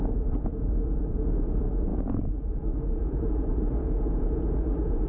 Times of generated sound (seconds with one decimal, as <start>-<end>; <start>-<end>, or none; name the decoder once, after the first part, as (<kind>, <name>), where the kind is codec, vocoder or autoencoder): 0.0-5.1 (vocoder, Vocos)